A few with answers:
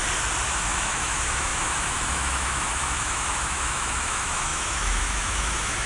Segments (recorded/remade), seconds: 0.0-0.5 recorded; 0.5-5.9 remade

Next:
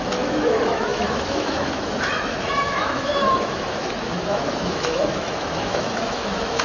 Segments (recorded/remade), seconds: 0.0-6.6 remade

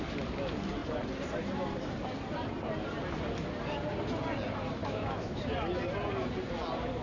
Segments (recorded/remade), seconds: 0.0-4.8 recorded; 4.8-5.4 remade; 5.4-7.0 recorded

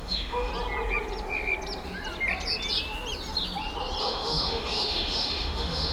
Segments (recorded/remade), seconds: 0.0-0.5 remade; 0.5-4.0 recorded; 4.0-5.9 remade

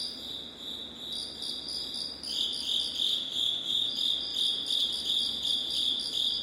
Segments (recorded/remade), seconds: 0.0-3.1 recorded; 3.1-3.9 remade; 3.9-6.4 recorded